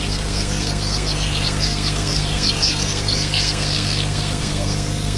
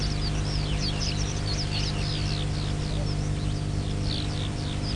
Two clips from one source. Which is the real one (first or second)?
second